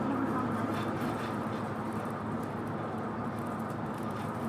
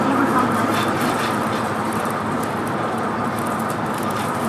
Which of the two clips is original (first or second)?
first